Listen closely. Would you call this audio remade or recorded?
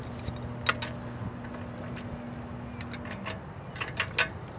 recorded